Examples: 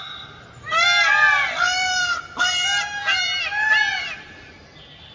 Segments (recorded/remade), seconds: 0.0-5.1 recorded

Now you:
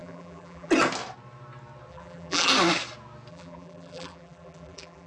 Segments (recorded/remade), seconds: 0.0-0.7 remade; 0.7-1.9 recorded; 1.9-2.5 remade; 2.5-3.3 recorded; 3.3-5.1 remade

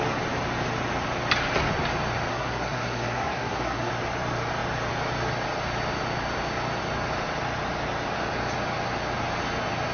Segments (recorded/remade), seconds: 0.0-2.3 recorded; 2.3-3.9 remade; 3.9-9.9 recorded

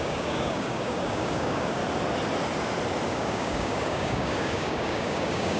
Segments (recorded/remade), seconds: 0.0-1.8 remade; 1.8-3.1 recorded; 3.1-5.6 remade

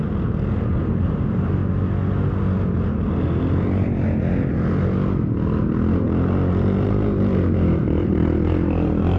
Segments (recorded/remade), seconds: 0.0-1.6 remade; 1.6-6.9 recorded; 6.9-9.2 remade

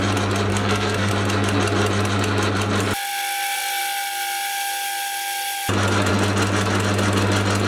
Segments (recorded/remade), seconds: 0.0-0.5 recorded; 0.5-1.1 remade; 1.1-7.7 recorded